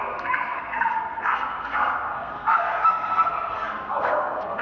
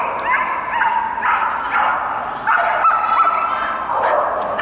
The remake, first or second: first